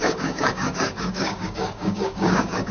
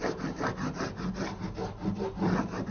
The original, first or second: second